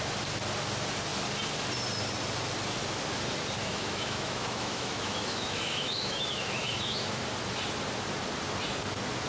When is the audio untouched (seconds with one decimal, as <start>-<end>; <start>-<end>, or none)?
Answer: 0.0-3.6; 7.2-9.3